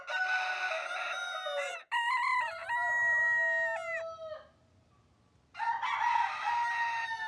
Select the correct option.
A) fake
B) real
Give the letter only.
B